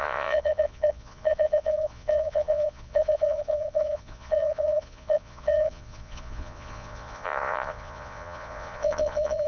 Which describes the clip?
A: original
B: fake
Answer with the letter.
B